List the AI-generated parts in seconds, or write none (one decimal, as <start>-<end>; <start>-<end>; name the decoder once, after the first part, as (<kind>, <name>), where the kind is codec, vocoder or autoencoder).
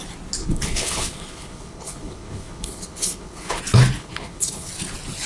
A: 0.4-3.6 (codec, HILCodec); 4.0-4.7